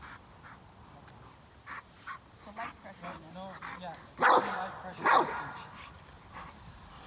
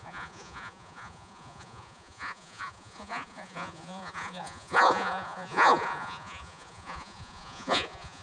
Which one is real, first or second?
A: first